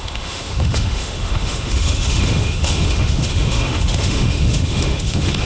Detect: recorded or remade remade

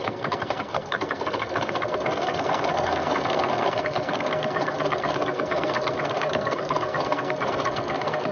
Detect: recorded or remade remade